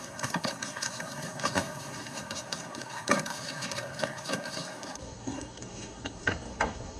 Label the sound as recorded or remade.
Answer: remade